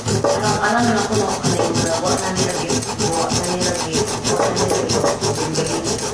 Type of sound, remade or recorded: recorded